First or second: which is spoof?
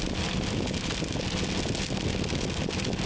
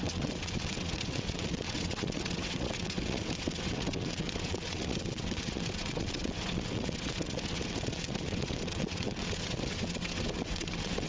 second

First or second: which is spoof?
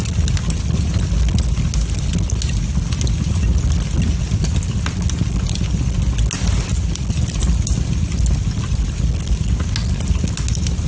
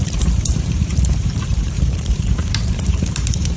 second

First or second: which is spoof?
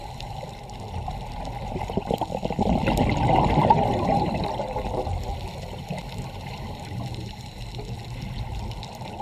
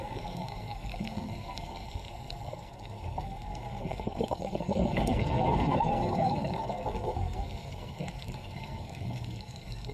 second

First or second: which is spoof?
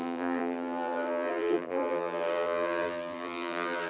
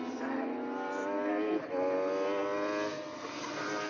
first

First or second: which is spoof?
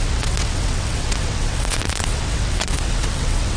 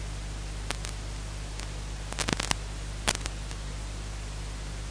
first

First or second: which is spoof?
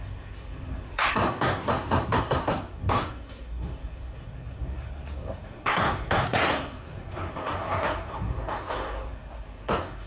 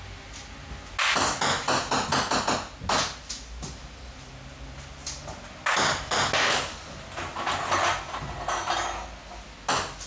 first